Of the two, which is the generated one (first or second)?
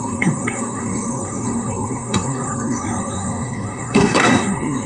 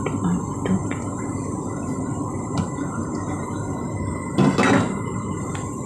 first